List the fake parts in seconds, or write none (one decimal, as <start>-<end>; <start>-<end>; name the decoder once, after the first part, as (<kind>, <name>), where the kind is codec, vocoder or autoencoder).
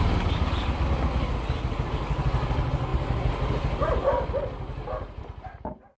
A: none